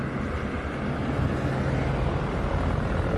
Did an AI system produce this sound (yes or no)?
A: no